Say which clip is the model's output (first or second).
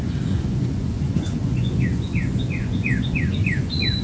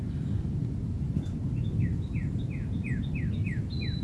first